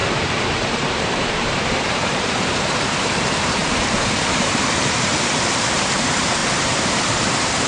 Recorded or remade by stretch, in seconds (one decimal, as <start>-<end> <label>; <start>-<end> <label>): 0.0-5.1 remade; 5.1-5.7 recorded; 5.7-7.7 remade